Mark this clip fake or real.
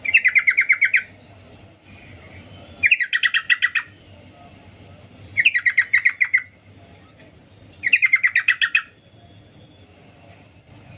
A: real